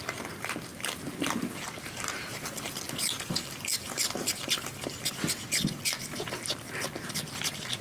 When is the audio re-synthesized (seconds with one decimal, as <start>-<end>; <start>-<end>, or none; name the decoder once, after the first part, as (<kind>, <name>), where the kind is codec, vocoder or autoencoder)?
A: 0.7-2.5 (vocoder, BigVGAN v2)